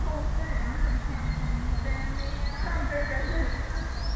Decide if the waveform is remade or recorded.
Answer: recorded